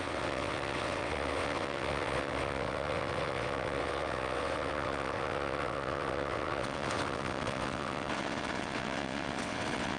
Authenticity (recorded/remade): remade